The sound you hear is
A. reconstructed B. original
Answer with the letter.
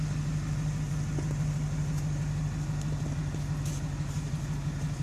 B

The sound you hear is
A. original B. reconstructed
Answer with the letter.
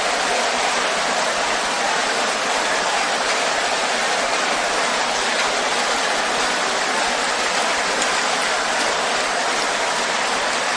A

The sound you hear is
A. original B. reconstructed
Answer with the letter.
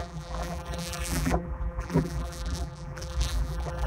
B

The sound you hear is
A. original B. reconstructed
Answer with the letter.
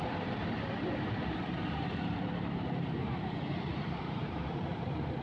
B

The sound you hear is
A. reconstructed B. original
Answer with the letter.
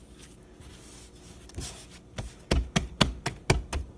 B